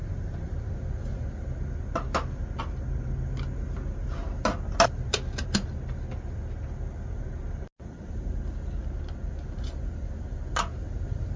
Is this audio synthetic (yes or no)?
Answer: no